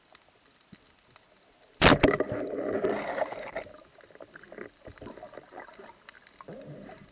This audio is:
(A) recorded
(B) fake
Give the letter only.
B